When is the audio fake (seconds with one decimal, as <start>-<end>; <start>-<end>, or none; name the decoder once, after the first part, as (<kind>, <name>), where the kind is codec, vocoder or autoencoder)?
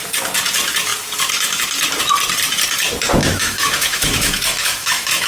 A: 3.2-5.3 (autoencoder, DAC-VAE)